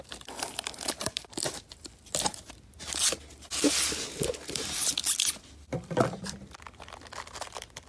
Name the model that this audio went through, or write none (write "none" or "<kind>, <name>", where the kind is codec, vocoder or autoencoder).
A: none